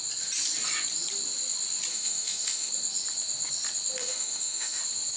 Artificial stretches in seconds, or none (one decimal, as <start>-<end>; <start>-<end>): 1.9-2.7; 4.0-4.8